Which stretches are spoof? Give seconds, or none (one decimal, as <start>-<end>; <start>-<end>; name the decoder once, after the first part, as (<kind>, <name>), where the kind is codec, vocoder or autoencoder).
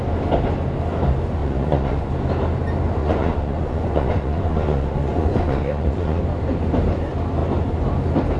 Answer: 1.4-2.1 (vocoder, Vocos); 3.0-6.2